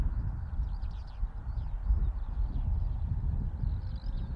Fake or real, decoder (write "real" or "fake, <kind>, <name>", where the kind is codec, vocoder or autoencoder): real